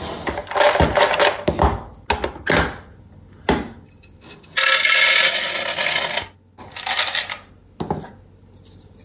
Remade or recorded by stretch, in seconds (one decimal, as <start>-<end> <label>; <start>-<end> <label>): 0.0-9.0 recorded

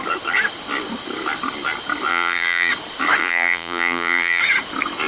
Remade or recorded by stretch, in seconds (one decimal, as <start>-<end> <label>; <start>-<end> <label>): 0.0-2.1 recorded; 2.1-2.7 remade; 2.7-3.2 recorded; 3.2-4.4 remade; 4.4-5.1 recorded

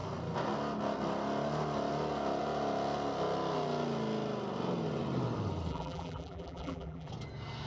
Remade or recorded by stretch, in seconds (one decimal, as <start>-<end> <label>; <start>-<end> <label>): 0.0-5.7 recorded; 5.7-7.1 remade; 7.1-7.7 recorded

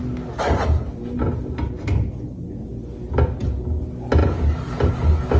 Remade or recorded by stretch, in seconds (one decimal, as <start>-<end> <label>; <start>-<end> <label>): 0.0-5.4 recorded

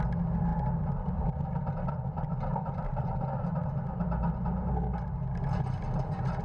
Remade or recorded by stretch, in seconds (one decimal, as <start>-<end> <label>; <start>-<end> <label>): 0.0-2.5 recorded; 2.5-3.2 remade; 3.2-6.4 recorded

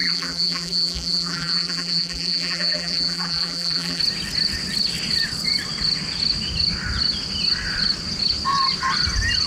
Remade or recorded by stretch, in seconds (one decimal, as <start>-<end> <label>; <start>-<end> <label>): 0.0-4.0 remade; 4.0-9.5 recorded